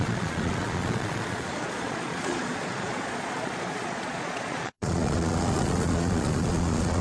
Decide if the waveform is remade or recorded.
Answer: remade